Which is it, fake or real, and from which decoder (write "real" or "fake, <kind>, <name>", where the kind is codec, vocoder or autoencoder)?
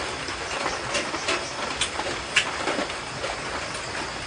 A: real